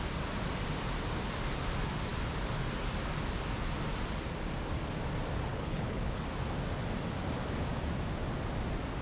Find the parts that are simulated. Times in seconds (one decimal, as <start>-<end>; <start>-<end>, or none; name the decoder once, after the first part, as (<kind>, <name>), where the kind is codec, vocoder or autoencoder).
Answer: 5.5-6.2 (codec, HILCodec)